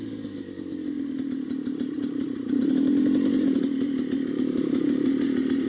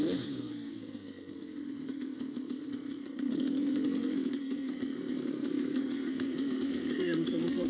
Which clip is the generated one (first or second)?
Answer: second